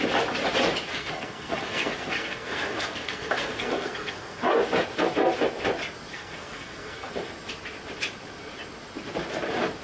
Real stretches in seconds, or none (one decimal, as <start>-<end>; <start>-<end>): 0.0-0.9; 4.5-6.1; 7.1-9.8